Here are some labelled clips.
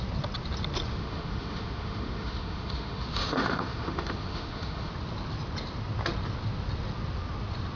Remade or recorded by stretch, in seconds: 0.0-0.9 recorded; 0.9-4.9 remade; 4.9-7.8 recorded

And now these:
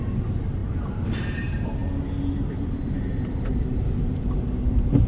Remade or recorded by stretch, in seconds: 0.0-1.8 remade; 1.8-2.5 recorded; 2.5-5.1 remade

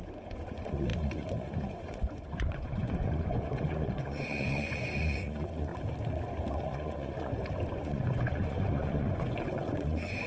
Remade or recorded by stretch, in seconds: 0.0-5.7 remade; 5.7-6.5 recorded; 6.5-7.3 remade; 7.3-7.8 recorded; 7.8-10.3 remade